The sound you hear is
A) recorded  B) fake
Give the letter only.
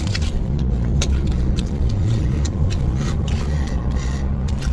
B